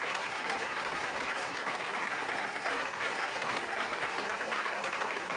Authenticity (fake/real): fake